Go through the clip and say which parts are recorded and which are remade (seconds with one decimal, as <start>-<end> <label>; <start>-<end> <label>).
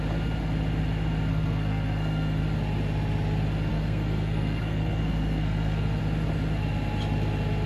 0.0-1.3 recorded; 1.3-2.4 remade; 2.4-3.7 recorded; 3.7-6.0 remade; 6.0-7.7 recorded